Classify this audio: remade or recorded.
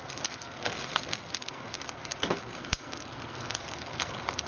remade